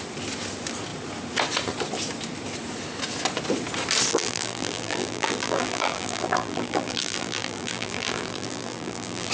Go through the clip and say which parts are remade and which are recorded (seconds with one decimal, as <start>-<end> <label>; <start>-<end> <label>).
0.0-4.1 recorded; 4.1-9.3 remade